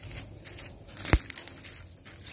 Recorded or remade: recorded